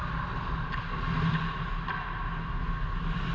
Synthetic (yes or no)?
no